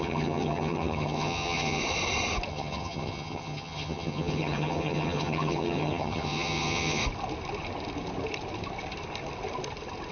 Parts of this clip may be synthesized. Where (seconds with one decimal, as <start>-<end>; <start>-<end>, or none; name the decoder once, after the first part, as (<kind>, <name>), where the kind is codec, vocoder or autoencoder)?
0.0-1.8 (vocoder, HiFi-GAN); 2.5-7.0